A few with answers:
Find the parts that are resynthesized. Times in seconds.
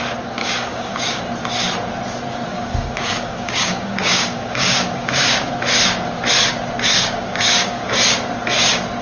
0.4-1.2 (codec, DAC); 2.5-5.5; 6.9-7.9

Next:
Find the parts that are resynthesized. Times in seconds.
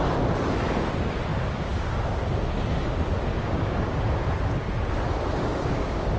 3.3-4.1 (codec, DAC); 5.4-6.2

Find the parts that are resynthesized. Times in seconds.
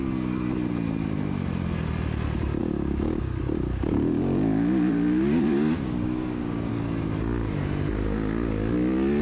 2.6-6.7 (codec, DAC)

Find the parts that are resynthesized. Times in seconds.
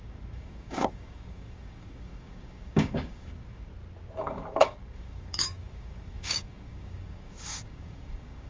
0.0-3.7 (codec, DAC); 4.2-8.5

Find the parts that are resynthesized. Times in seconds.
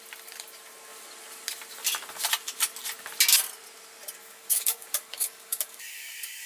4.2-6.5 (codec, DAC)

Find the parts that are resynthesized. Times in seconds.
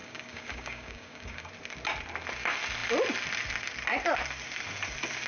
0.0-1.5 (codec, DAC)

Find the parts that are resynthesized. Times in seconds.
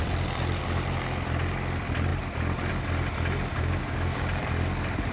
3.5-4.4 (codec, DAC)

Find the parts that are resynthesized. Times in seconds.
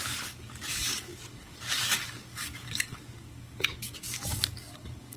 0.0-5.2 (codec, DAC)